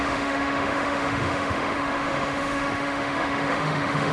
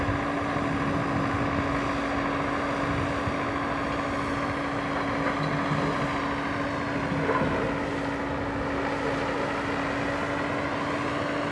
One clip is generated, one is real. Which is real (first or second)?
second